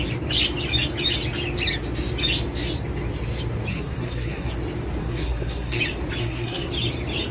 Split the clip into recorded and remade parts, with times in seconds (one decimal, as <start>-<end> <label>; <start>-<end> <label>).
0.0-3.7 recorded; 3.7-4.5 remade; 4.5-5.0 recorded; 5.0-5.8 remade; 5.8-6.2 recorded; 6.2-6.7 remade; 6.7-7.3 recorded